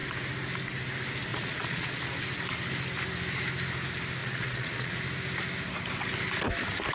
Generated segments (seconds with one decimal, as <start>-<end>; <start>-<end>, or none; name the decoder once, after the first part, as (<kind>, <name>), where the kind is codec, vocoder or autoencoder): 1.3-2.0 (vocoder, Vocos); 4.2-5.0